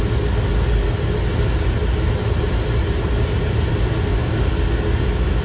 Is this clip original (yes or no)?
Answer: yes